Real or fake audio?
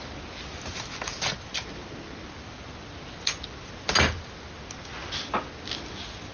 real